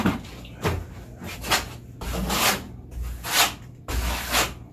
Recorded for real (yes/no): yes